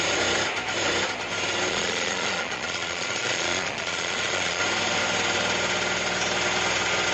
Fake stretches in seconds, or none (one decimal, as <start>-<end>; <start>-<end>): 1.7-4.6